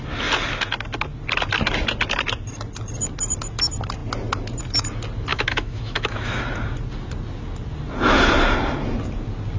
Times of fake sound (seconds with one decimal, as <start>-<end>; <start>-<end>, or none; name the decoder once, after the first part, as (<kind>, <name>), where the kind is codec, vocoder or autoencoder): 5.3-6.4 (autoencoder, DAC-VAE)